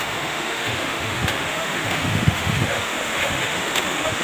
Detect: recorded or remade remade